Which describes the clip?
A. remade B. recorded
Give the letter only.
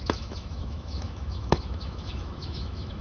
A